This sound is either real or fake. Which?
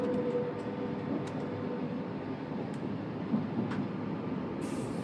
real